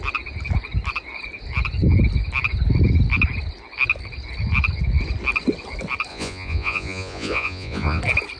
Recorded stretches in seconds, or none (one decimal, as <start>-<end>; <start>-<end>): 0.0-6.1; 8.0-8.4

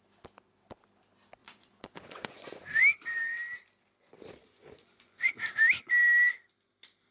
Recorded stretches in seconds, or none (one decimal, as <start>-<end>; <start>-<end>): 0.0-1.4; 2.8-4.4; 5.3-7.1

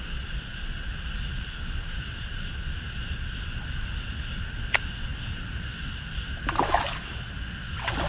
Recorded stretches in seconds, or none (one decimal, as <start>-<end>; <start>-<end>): 0.0-8.1

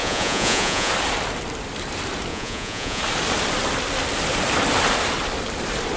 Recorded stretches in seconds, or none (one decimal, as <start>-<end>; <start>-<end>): 0.9-2.3; 3.0-6.0

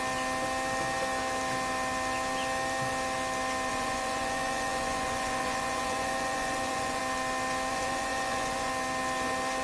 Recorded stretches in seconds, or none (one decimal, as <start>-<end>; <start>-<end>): 0.0-3.7; 7.0-7.7; 8.7-9.6

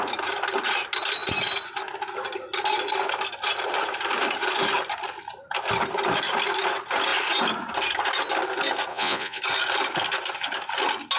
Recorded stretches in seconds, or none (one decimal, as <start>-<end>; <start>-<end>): 0.0-8.9; 9.4-11.2

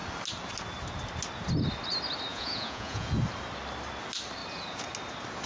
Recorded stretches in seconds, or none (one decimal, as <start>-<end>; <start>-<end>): 0.0-2.3; 3.1-5.5